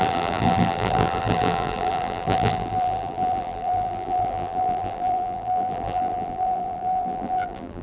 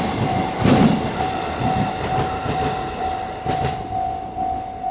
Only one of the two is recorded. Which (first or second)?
second